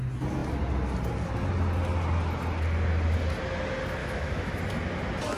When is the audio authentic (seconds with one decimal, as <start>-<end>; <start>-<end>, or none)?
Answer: 0.0-4.0; 4.6-5.4

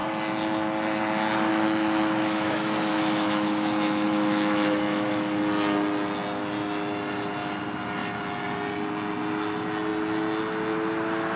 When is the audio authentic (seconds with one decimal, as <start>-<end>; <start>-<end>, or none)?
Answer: 0.0-1.5; 5.4-11.4

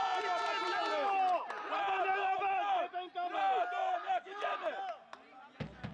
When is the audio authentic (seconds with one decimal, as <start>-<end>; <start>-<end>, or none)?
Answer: 0.0-3.8; 4.8-5.9

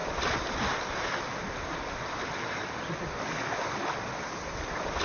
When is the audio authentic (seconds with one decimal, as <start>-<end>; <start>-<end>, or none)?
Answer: 0.0-5.0

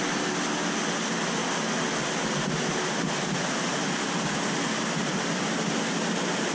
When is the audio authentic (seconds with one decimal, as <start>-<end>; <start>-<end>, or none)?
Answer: 0.0-6.5

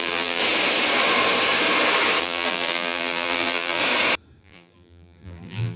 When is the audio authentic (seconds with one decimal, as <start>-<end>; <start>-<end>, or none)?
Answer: 0.4-2.2; 3.8-4.4

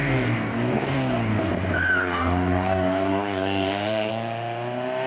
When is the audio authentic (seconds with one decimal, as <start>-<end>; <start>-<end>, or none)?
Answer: 1.5-2.0; 4.1-5.1

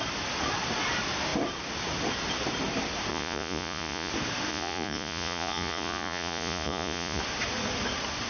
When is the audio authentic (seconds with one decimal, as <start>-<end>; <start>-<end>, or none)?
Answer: 0.0-3.1; 4.1-4.5; 7.2-8.3